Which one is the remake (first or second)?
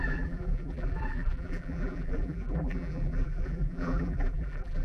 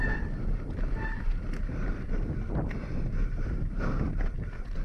first